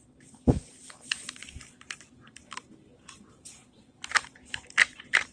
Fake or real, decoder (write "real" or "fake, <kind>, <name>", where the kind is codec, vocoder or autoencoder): fake, vocoder, BigVGAN v2